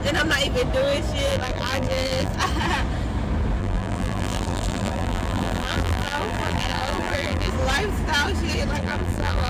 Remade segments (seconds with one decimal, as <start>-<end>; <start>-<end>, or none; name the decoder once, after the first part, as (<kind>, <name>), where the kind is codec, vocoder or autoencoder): 1.3-2.3 (vocoder, BigVGAN v2); 3.6-7.5; 8.8-9.5